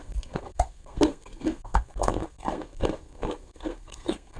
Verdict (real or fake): fake